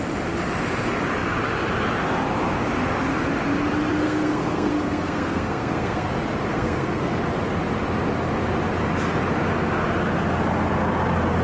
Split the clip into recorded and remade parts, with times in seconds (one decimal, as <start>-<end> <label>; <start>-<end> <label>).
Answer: 0.0-4.0 recorded; 4.0-6.1 remade; 6.1-6.5 recorded; 6.5-7.1 remade; 7.1-11.4 recorded